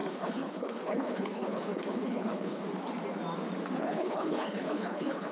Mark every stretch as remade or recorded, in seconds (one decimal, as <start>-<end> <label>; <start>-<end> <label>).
0.0-2.6 remade; 2.6-3.8 recorded; 3.8-5.3 remade